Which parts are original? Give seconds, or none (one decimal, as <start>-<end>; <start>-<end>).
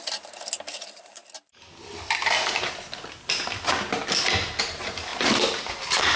1.2-4.6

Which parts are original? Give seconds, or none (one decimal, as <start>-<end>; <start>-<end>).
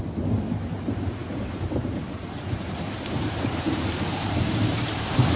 0.0-2.2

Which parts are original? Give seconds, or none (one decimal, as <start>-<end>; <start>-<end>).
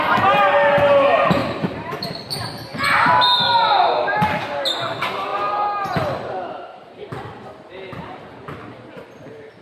0.0-1.4; 2.1-9.6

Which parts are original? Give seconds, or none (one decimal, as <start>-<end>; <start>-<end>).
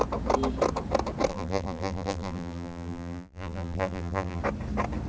0.0-1.3; 4.4-5.1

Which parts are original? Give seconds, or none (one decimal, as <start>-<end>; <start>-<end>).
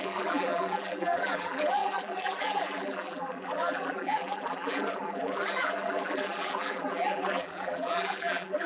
none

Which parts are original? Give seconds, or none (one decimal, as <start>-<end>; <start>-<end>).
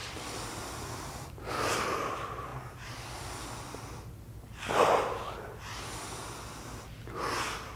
1.9-7.8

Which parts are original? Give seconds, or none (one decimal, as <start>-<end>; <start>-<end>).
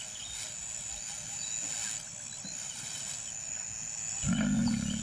0.0-5.0